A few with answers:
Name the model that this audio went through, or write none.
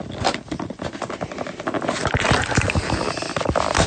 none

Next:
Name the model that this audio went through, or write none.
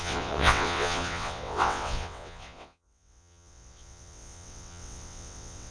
vocoder, WaveNeXt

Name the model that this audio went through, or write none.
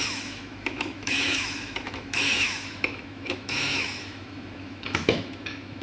autoencoder, DAC-VAE